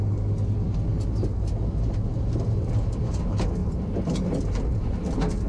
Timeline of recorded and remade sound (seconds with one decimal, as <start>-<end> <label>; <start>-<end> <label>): 0.0-5.5 recorded